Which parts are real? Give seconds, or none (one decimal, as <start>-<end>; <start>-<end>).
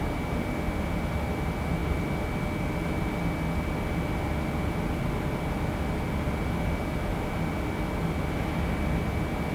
0.0-9.5